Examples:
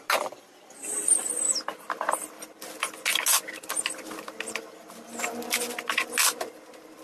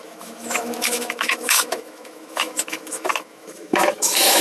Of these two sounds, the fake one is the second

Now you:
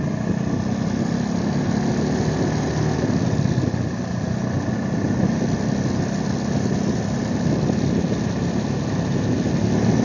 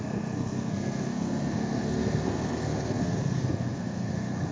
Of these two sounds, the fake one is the second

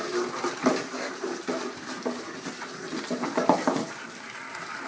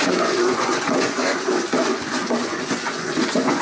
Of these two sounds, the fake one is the second